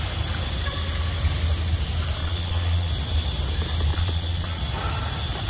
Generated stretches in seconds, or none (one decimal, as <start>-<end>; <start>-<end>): 2.2-2.9; 3.9-4.6